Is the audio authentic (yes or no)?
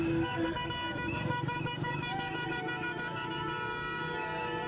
no